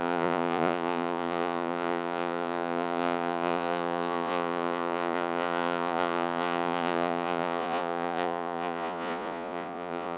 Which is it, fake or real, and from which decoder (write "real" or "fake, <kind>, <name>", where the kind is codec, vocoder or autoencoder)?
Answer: fake, vocoder, Vocos